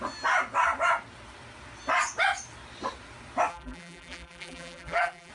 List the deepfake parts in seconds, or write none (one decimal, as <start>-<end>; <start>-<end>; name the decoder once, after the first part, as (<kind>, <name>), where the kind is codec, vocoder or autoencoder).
3.5-5.3 (vocoder, BigVGAN v2)